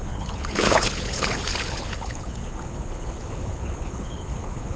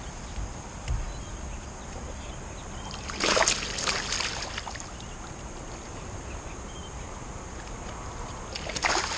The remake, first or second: first